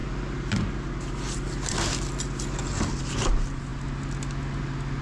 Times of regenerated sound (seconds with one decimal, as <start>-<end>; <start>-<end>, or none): none